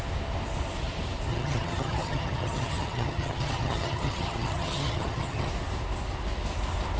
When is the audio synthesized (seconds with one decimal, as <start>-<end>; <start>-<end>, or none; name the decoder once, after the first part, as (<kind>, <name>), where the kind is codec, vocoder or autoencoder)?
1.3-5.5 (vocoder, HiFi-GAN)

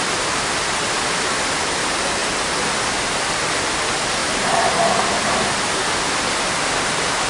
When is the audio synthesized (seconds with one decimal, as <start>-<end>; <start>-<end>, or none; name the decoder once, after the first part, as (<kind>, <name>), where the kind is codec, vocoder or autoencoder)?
4.2-5.2 (vocoder, BigVGAN v2)

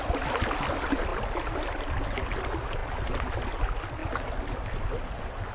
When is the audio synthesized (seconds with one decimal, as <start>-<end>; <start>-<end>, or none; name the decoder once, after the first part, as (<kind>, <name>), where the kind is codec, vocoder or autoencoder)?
none

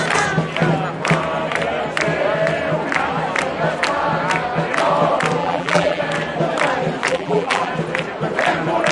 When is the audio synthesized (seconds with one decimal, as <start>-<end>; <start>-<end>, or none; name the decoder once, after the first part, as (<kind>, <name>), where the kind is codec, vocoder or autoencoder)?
5.4-6.0 (vocoder, BigVGAN v2); 7.1-7.7